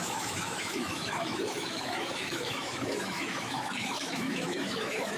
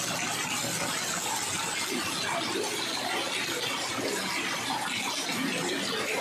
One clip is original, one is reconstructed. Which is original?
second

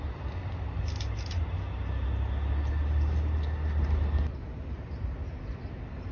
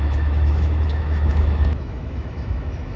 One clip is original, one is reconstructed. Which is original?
first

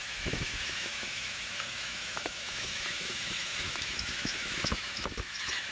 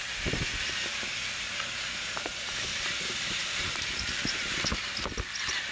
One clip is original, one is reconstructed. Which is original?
second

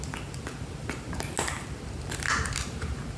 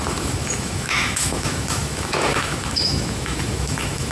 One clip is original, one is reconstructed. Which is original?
first